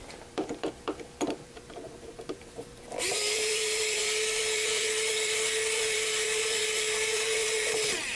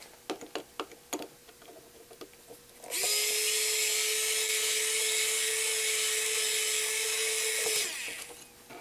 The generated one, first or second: first